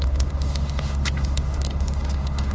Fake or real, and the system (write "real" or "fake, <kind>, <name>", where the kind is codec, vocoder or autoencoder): fake, autoencoder, DAC-VAE